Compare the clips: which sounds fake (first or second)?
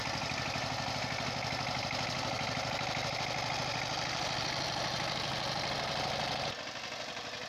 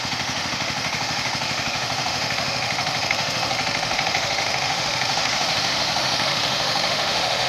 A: second